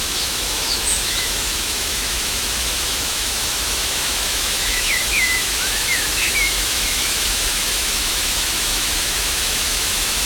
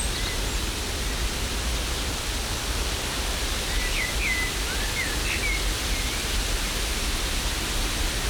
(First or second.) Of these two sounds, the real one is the second